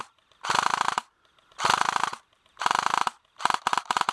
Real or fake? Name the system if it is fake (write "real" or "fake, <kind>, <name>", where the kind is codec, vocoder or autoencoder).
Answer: real